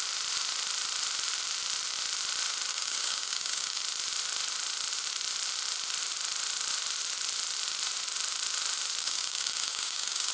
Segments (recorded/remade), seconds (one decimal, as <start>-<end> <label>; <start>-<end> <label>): 0.0-2.7 recorded; 2.7-3.8 remade; 3.8-9.0 recorded; 9.0-10.3 remade